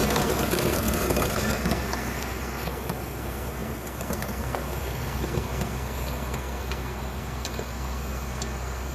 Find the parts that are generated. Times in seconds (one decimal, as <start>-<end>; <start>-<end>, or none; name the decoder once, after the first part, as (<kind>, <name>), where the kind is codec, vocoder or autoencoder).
0.0-8.9 (codec, SNAC)